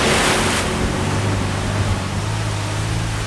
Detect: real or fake real